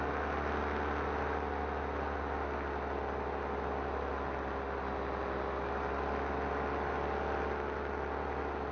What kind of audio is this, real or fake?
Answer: real